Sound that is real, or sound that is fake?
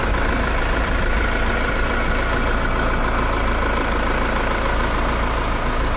real